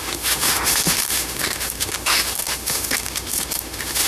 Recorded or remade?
remade